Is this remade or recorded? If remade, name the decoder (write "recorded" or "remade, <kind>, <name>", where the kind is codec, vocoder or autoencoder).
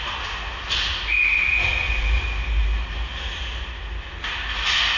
recorded